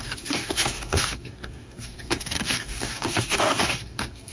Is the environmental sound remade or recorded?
remade